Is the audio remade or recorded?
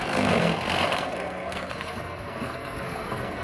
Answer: remade